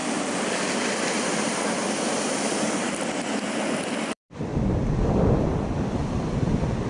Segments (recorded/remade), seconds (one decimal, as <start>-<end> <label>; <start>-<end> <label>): 0.0-4.5 remade; 4.5-5.4 recorded; 5.4-6.9 remade

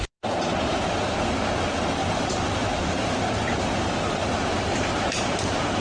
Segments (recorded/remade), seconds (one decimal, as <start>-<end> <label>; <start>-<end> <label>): 0.0-2.0 recorded; 2.0-5.8 remade

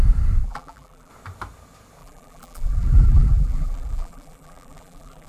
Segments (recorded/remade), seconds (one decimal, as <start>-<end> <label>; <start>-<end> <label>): 0.0-0.4 recorded; 0.4-1.1 remade; 1.1-2.0 recorded; 2.0-5.3 remade

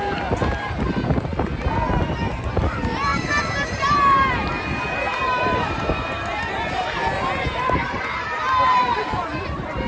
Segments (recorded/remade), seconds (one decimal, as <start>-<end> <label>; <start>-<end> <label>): 0.0-3.1 recorded; 3.1-4.3 remade; 4.3-5.2 recorded; 5.2-9.9 remade